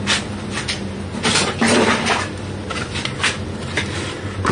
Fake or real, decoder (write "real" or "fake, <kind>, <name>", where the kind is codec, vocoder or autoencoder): real